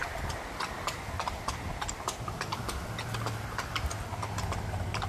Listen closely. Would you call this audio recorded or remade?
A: recorded